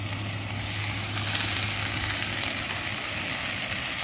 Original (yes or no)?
yes